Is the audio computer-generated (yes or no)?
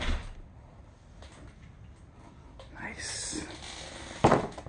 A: no